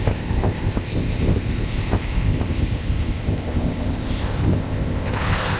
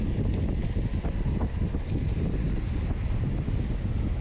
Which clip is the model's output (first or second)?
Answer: first